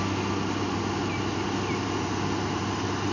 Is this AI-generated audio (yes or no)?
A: no